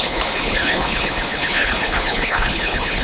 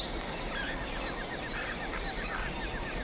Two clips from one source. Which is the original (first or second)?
second